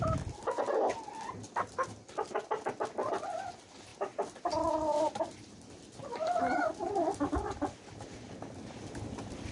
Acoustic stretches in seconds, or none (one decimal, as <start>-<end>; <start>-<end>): 0.0-9.5